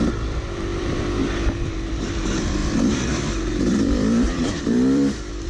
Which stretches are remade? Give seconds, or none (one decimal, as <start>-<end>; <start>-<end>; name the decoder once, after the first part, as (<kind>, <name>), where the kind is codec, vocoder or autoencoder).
0.0-2.6 (vocoder, BigVGAN v2); 3.3-5.5